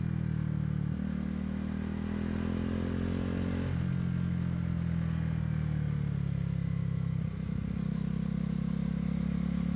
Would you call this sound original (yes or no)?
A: yes